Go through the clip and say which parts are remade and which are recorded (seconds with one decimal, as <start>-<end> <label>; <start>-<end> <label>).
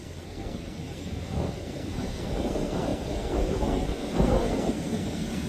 0.0-5.5 remade